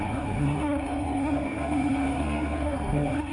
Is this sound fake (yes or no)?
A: yes